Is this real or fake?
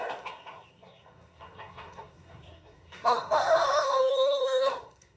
fake